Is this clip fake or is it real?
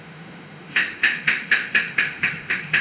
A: fake